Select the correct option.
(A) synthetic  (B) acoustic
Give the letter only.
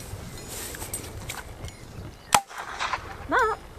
B